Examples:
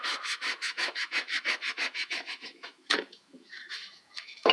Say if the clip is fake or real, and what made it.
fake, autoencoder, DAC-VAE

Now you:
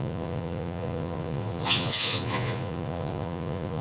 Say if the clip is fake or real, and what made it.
fake, vocoder, Vocos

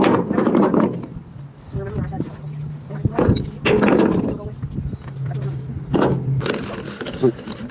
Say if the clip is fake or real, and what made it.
real